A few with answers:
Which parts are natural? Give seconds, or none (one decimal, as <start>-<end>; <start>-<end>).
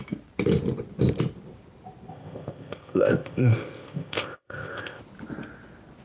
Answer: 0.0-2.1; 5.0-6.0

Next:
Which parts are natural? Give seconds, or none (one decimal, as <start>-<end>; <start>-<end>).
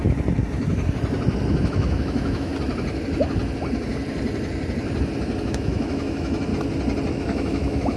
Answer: 0.0-1.6; 2.5-5.4; 6.5-7.1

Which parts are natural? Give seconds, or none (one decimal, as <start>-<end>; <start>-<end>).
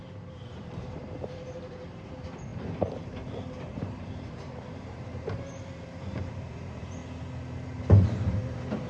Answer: 2.5-3.1; 7.0-8.1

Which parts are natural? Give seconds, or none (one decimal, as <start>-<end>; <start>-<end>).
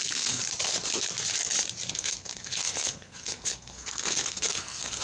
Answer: 0.4-1.9